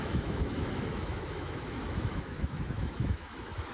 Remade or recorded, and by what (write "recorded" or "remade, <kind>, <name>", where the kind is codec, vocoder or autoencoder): remade, autoencoder, DAC-VAE